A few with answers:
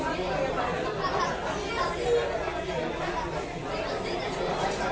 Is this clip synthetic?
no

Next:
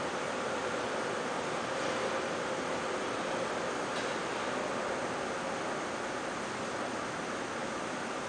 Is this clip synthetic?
no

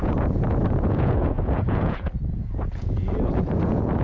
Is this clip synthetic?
yes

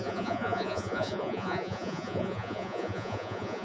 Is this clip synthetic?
yes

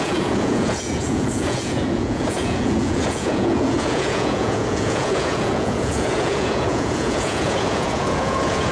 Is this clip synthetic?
yes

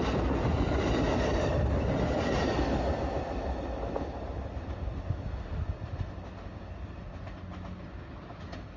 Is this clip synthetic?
no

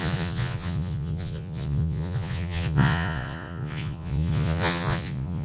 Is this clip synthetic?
yes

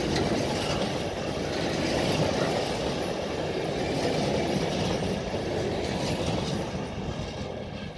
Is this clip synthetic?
no